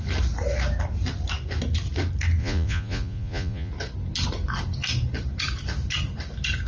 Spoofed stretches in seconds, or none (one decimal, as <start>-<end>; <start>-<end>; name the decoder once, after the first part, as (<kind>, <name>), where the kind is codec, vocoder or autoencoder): 2.4-3.7 (vocoder, Vocos)